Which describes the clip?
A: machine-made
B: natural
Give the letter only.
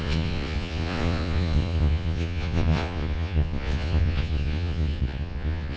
A